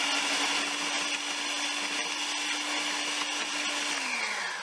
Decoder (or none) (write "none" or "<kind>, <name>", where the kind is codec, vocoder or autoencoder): none